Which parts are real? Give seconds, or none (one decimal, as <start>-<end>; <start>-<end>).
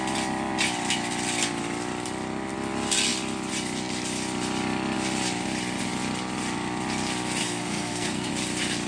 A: 0.0-7.4; 8.3-8.9